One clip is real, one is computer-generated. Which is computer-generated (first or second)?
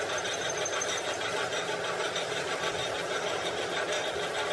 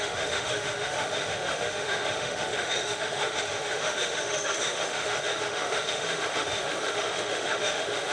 second